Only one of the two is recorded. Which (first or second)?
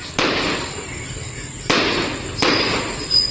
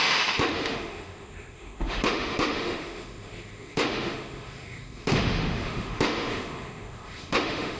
first